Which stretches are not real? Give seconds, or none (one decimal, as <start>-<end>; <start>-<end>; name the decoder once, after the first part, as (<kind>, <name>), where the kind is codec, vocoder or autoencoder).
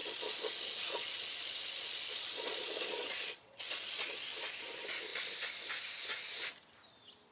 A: 0.0-4.4 (vocoder, Vocos)